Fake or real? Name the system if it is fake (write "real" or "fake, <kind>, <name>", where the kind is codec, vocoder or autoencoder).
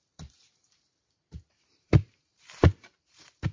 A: fake, vocoder, BigVGAN v2